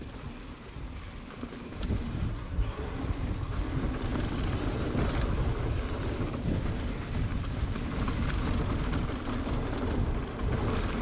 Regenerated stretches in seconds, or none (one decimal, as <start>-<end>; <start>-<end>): 2.3-3.0